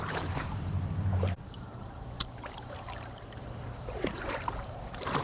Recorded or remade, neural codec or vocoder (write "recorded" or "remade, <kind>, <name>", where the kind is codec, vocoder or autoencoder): remade, vocoder, BigVGAN v2